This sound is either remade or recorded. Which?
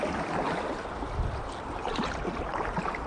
recorded